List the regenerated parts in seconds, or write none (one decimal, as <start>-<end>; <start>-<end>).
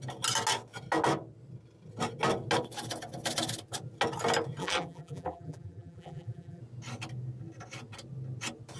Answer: 4.6-6.6